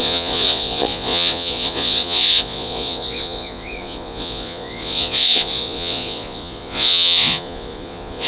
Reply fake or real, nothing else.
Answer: fake